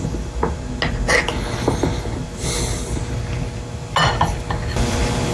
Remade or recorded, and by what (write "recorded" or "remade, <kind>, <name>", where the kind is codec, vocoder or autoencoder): recorded